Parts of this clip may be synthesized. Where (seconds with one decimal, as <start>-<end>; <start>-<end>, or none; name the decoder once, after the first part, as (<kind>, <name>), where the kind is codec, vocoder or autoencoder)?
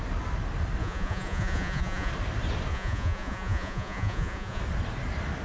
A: 0.8-2.1 (vocoder, Vocos); 2.7-4.6